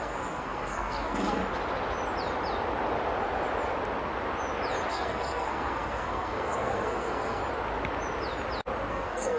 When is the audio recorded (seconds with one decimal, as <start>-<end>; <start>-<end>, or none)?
1.4-4.9; 7.4-8.9

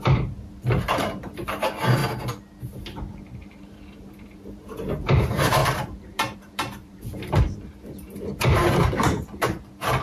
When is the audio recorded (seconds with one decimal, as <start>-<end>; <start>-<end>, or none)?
2.0-2.8

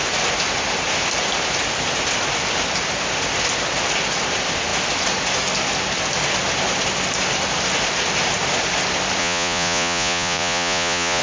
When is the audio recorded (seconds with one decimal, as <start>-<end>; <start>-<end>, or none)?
0.0-9.2

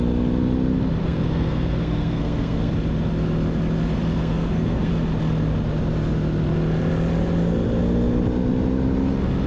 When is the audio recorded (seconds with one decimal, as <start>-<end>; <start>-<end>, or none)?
0.0-1.0; 2.7-4.2; 4.9-9.5

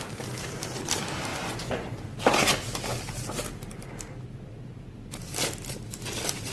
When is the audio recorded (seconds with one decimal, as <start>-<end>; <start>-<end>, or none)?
0.0-1.3; 1.9-6.5